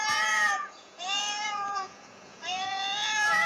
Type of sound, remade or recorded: remade